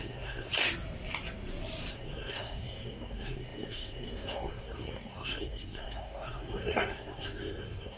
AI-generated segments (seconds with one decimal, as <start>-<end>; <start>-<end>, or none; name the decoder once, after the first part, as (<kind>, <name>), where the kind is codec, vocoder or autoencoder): 0.0-0.5 (codec, SNAC); 1.9-8.0